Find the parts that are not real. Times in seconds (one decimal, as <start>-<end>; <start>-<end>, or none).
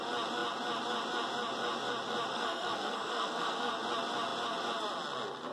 2.3-3.7